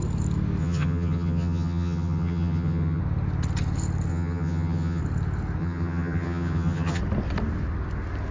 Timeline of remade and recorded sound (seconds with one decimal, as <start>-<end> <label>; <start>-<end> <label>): 0.0-0.6 recorded; 0.6-3.0 remade; 3.0-4.1 recorded; 4.1-5.0 remade; 5.0-5.6 recorded; 5.6-7.0 remade; 7.0-8.3 recorded